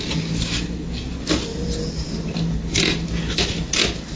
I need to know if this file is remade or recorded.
recorded